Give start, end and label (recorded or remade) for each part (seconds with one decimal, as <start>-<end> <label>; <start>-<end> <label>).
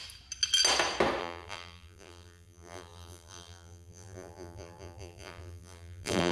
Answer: 0.0-1.2 recorded; 1.2-6.3 remade